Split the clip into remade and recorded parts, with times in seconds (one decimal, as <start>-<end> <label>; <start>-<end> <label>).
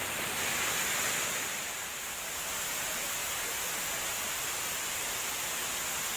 0.0-6.2 recorded